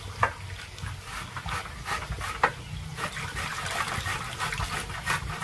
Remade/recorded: recorded